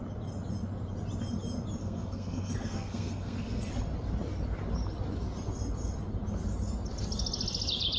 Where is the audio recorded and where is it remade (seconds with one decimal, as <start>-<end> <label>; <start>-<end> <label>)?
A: 0.0-1.8 recorded; 1.8-3.7 remade; 3.7-8.0 recorded

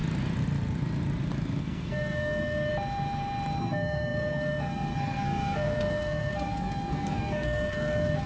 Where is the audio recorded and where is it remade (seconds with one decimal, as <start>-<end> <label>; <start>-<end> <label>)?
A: 0.0-1.6 recorded; 1.6-2.7 remade; 2.7-3.6 recorded; 3.6-8.3 remade

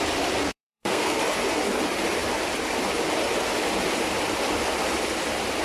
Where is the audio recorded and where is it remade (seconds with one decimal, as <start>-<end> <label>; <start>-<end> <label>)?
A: 0.0-0.4 recorded; 0.4-1.2 remade; 1.2-5.6 recorded

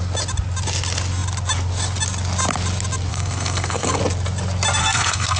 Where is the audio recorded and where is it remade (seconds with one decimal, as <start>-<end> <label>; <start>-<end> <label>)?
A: 0.0-3.1 recorded; 3.1-4.0 remade; 4.0-4.8 recorded; 4.8-5.4 remade

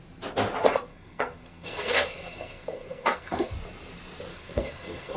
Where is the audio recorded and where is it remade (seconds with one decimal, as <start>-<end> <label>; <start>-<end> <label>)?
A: 0.0-0.9 recorded; 0.9-3.5 remade; 3.5-4.3 recorded; 4.3-5.2 remade

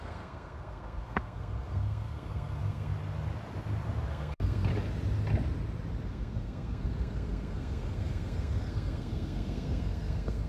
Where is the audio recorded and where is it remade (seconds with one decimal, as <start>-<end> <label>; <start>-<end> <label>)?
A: 0.0-2.9 remade; 2.9-4.1 recorded; 4.1-4.7 remade; 4.7-6.1 recorded; 6.1-10.5 remade

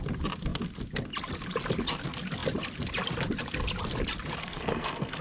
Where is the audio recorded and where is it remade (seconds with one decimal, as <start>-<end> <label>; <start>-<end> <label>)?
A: 0.0-4.4 recorded; 4.4-5.2 remade

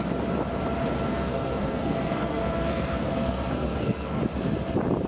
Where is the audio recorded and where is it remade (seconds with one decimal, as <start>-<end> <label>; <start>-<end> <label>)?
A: 0.0-1.1 recorded; 1.1-4.2 remade; 4.2-5.1 recorded